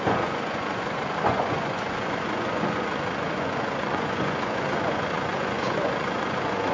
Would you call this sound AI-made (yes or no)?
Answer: yes